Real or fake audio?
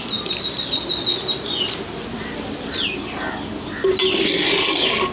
real